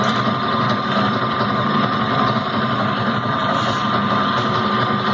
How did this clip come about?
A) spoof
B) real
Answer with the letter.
B